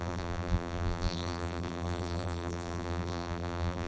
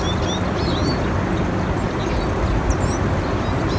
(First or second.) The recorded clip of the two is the second